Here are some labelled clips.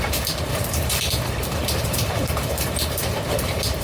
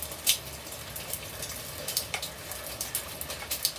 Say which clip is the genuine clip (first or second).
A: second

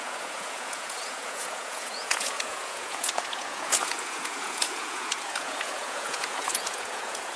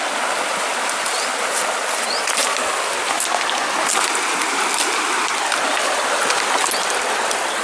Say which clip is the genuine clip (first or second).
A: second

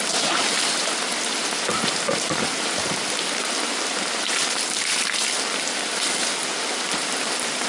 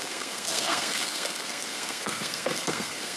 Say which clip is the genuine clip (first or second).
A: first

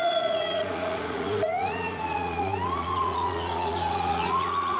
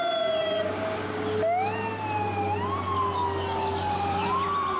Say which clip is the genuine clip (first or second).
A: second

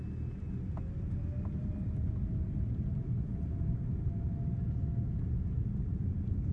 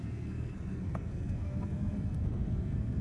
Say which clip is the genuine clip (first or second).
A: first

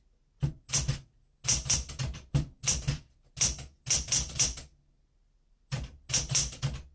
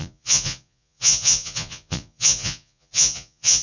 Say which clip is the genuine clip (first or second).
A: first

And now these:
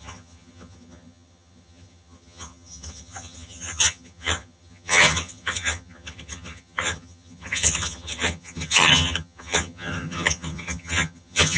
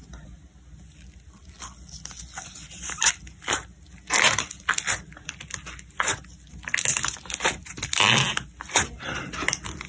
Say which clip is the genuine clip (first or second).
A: second